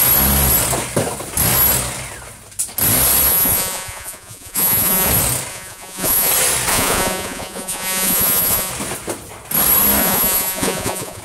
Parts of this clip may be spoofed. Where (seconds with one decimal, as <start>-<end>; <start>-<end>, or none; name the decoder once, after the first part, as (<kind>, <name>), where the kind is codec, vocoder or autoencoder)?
3.3-5.1 (vocoder, Vocos); 5.5-6.3; 6.7-8.7; 10.0-11.2